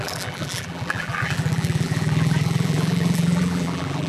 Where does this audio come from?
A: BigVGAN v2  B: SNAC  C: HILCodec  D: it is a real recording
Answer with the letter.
A